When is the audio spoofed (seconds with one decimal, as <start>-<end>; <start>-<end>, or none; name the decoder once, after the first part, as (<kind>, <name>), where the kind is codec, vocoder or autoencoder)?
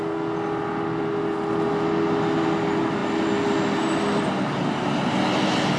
none